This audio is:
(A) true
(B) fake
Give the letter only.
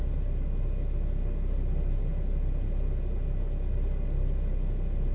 A